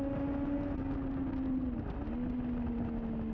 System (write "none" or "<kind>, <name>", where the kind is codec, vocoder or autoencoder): none